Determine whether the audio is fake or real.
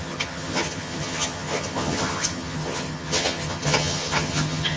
fake